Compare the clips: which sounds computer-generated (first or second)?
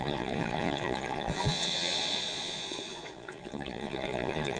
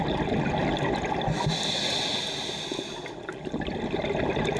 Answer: first